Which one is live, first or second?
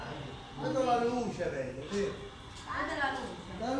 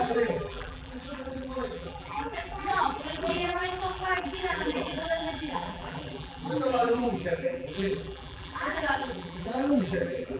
first